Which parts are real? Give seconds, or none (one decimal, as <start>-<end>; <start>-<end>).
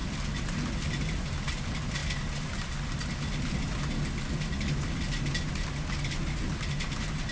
0.0-7.3